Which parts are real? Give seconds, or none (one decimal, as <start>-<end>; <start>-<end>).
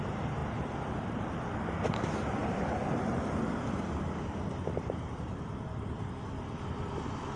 0.0-0.4; 1.6-2.4; 6.1-7.4